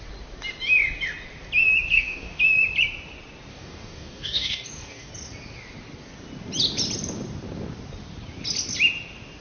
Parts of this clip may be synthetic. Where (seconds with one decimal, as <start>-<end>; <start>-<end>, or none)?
1.9-2.4; 3.5-5.1